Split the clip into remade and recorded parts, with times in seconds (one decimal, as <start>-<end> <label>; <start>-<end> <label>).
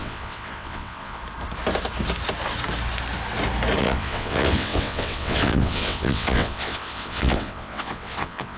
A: 0.0-1.2 remade; 1.2-3.8 recorded; 3.8-8.6 remade